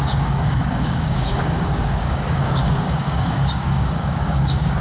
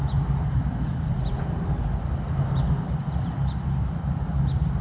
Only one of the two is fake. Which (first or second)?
first